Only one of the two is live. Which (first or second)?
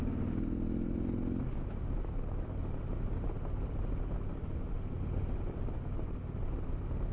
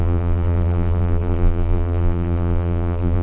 first